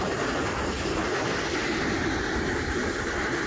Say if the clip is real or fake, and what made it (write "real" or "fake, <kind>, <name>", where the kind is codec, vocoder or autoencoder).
real